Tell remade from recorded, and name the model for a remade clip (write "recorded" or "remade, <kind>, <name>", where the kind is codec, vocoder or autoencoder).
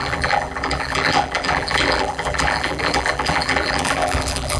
remade, vocoder, BigVGAN v2